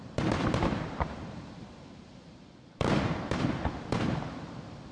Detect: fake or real fake